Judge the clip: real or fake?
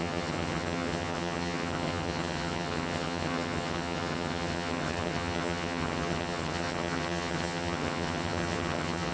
fake